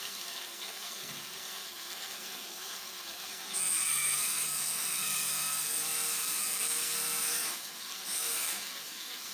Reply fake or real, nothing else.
fake